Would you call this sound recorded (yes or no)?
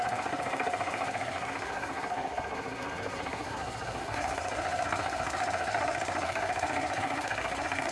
no